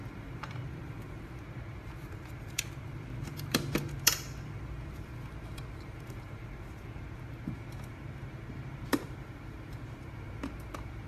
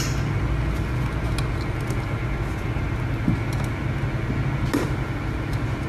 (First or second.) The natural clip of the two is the second